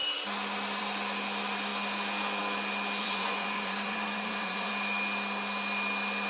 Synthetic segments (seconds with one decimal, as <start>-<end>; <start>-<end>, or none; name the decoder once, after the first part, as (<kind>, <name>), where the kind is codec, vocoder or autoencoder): 3.0-4.7 (vocoder, Vocos)